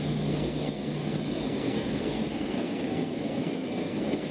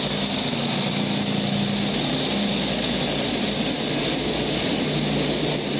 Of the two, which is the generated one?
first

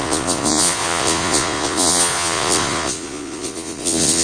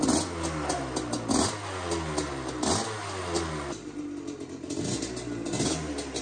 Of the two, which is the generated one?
first